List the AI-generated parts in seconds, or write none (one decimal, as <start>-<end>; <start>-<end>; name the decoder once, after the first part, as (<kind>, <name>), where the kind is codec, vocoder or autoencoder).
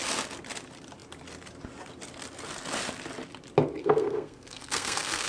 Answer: 3.8-5.3 (codec, SNAC)